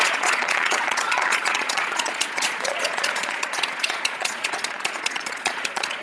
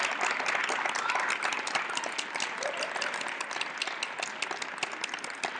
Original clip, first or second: second